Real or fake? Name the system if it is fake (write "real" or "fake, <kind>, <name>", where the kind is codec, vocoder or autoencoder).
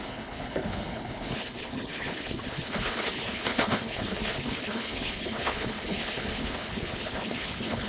fake, codec, HILCodec